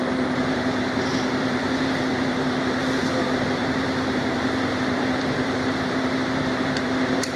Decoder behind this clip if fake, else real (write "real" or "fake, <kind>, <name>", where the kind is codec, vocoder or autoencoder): fake, vocoder, BigVGAN v2